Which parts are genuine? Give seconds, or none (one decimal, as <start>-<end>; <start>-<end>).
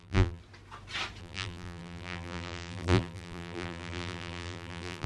0.4-1.2